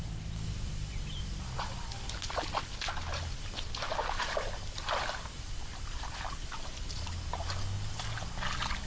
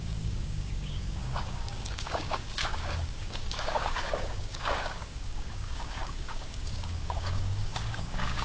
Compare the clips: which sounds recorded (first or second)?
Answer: first